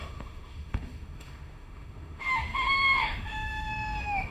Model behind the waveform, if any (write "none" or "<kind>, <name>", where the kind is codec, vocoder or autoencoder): autoencoder, DAC-VAE